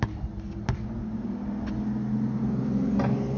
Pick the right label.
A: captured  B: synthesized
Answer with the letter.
A